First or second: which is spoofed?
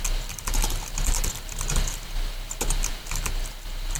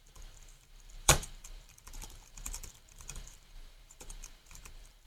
second